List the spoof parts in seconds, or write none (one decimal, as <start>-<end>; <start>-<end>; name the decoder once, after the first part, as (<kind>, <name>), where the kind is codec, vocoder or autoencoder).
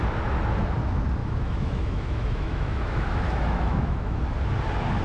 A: 1.2-4.2 (autoencoder, DAC-VAE)